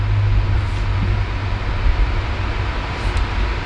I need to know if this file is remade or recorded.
recorded